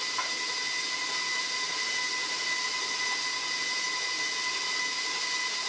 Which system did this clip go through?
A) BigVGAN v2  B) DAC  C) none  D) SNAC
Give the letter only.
C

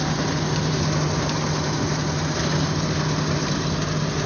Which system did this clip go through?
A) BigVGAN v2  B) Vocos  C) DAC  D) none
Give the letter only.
D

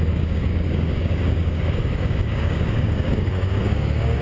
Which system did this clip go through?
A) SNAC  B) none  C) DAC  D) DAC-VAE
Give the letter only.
C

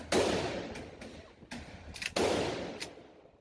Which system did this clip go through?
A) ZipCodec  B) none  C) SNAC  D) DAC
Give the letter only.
B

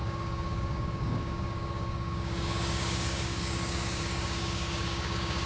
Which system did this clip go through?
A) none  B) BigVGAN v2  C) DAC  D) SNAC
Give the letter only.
C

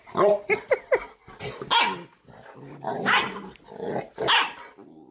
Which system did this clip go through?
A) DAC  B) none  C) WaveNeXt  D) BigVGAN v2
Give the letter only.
B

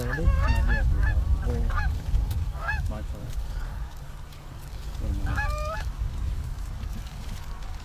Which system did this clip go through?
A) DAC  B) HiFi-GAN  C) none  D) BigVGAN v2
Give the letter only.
A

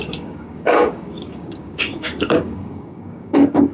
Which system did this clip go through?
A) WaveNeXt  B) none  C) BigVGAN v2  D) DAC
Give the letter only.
D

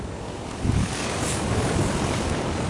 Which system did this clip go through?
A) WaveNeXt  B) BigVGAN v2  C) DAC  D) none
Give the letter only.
C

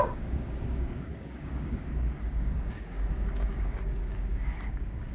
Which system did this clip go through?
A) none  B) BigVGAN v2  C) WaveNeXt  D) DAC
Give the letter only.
D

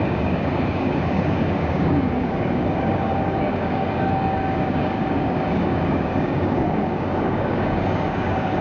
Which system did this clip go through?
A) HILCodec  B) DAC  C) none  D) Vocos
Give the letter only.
B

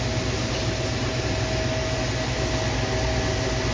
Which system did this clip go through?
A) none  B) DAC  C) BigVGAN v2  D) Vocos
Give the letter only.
A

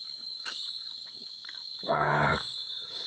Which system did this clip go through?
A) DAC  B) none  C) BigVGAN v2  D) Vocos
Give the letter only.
A